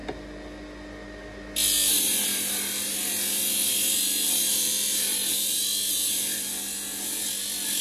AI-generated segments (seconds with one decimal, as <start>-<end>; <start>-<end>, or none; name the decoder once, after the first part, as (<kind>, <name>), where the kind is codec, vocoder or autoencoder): none

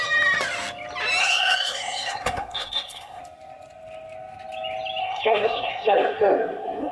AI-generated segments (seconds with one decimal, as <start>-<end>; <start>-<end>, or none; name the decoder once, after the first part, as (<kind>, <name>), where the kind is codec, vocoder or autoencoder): 1.2-3.2 (codec, SNAC); 5.0-6.9

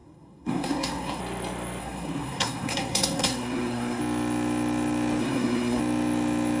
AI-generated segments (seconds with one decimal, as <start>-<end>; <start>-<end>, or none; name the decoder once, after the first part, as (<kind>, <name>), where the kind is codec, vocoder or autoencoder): 0.0-1.2 (codec, SNAC); 1.8-4.0; 5.2-5.8